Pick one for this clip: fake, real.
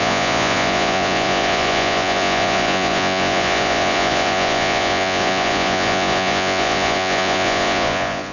fake